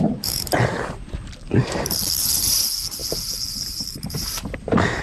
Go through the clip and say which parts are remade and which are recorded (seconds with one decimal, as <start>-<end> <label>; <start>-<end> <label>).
0.0-5.0 remade